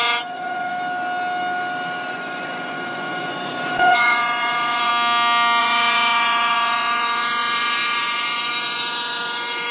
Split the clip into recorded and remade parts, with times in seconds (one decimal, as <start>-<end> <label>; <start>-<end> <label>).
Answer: 0.0-0.7 remade; 0.7-2.1 recorded; 2.1-4.9 remade; 4.9-5.6 recorded; 5.6-9.7 remade